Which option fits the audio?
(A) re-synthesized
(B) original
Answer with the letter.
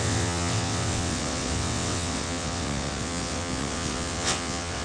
A